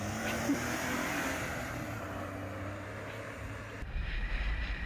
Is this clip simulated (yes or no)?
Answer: yes